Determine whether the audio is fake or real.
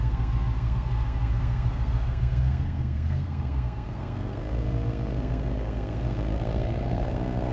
fake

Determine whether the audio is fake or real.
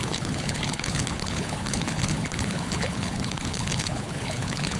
fake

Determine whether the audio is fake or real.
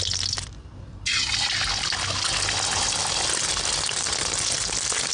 real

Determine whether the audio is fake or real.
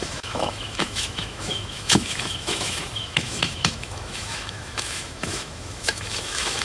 fake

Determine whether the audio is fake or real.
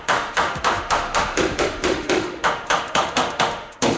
fake